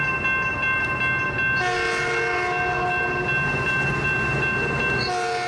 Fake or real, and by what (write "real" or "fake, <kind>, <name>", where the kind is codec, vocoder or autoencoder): real